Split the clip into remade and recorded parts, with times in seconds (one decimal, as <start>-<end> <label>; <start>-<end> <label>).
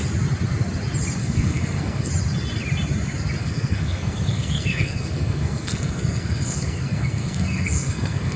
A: 0.0-1.2 recorded; 1.2-2.1 remade; 2.1-3.4 recorded; 3.4-8.4 remade